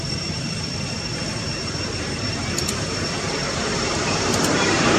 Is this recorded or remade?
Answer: remade